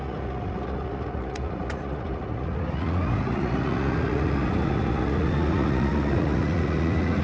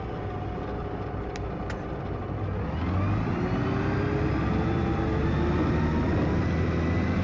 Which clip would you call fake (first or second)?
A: first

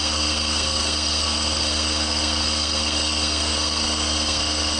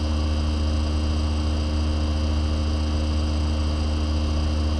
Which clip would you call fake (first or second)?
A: first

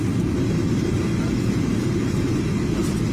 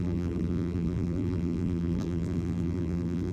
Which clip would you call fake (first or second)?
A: second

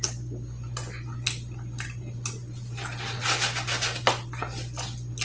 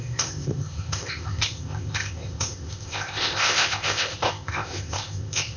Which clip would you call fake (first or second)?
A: second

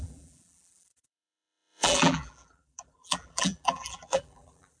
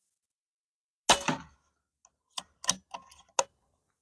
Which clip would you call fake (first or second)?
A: first